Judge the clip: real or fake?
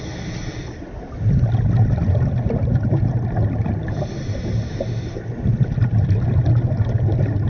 real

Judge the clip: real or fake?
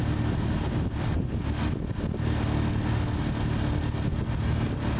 real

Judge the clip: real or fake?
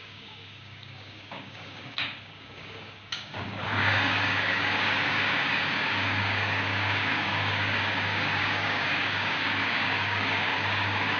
fake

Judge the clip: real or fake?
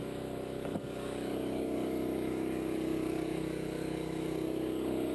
fake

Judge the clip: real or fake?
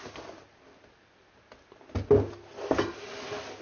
real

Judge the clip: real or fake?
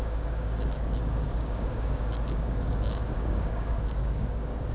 fake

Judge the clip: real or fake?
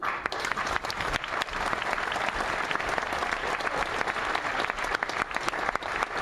real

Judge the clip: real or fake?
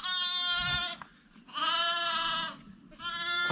real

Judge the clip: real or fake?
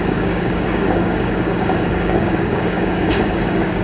fake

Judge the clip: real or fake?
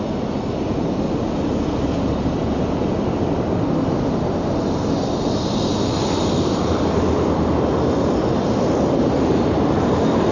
real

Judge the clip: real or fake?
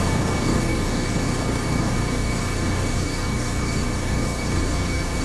fake